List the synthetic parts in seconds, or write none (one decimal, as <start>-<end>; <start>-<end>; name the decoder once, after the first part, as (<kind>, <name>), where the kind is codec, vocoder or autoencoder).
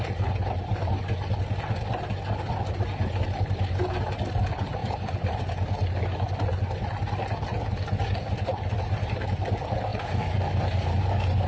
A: 4.8-5.4 (vocoder, BigVGAN v2); 9.9-11.5